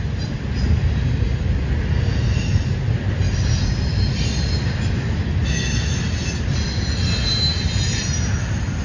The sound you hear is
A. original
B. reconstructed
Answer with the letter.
A